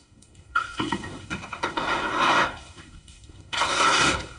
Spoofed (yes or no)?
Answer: yes